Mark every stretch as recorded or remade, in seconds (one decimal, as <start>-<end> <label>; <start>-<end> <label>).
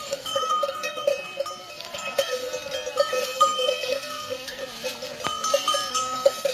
0.0-1.1 remade; 1.1-1.7 recorded; 1.7-2.5 remade; 2.5-3.1 recorded; 3.1-4.6 remade; 4.6-5.9 recorded; 5.9-6.5 remade